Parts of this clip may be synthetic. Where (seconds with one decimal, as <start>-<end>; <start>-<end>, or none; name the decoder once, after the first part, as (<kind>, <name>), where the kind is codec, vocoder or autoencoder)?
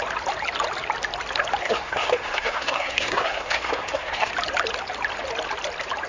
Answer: 1.6-4.3 (codec, SNAC)